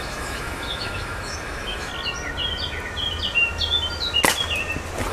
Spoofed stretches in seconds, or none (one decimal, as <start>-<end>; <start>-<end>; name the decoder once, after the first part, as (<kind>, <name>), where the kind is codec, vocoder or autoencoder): 0.0-1.9 (autoencoder, DAC-VAE)